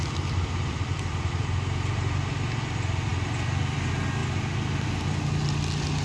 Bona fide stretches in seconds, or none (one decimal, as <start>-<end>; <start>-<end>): 0.0-6.0

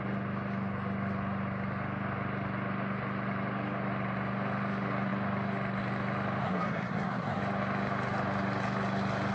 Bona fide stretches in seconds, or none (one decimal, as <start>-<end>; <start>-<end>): 0.0-6.4; 7.4-9.3

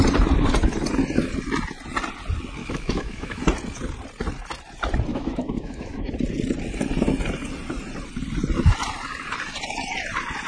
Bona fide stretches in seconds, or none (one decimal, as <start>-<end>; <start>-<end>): 0.0-2.6; 3.4-5.1; 6.1-10.5

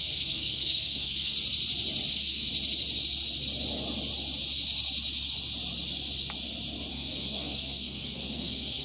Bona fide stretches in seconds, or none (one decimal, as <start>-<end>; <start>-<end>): 1.3-2.1; 2.5-6.9

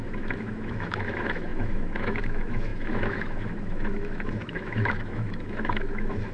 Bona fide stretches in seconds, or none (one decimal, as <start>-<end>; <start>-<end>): none

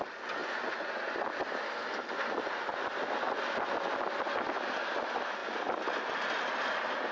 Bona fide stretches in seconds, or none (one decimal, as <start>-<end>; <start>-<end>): 0.0-0.4; 0.9-7.1

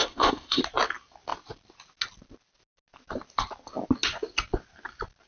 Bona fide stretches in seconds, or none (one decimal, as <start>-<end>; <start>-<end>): 0.6-5.3

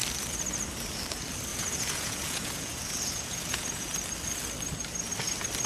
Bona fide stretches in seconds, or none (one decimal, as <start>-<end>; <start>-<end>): 0.0-1.5; 3.9-5.7